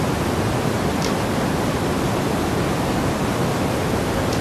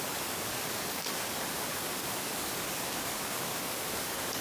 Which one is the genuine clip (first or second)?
first